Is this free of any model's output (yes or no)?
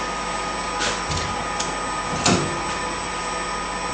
yes